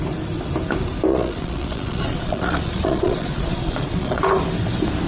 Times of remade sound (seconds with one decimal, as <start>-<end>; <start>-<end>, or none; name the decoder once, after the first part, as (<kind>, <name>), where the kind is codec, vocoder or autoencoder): 1.1-4.2 (vocoder, Vocos)